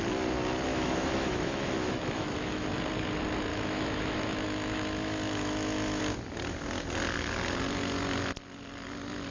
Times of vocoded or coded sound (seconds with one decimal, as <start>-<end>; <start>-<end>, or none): 0.7-2.7; 3.5-6.0